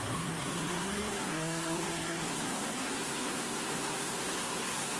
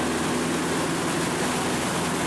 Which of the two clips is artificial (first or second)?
first